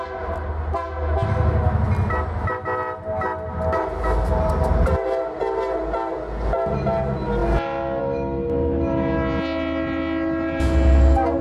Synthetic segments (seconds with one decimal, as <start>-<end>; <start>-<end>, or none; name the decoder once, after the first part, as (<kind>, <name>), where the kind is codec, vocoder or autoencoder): none